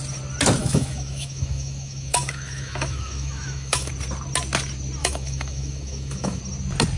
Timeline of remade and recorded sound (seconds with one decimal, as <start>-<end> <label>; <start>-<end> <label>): 0.0-0.6 recorded; 0.6-3.9 remade; 3.9-5.0 recorded; 5.0-6.4 remade; 6.4-7.0 recorded